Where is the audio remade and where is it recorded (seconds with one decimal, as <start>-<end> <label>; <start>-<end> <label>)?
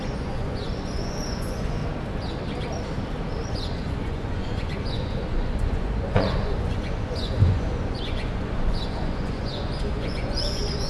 0.0-1.8 remade; 1.8-3.5 recorded; 3.5-10.9 remade